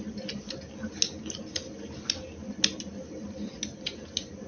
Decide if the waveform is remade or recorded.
recorded